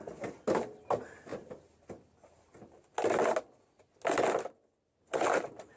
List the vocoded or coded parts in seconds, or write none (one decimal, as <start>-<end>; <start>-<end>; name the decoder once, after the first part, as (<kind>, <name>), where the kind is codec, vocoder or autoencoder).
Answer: none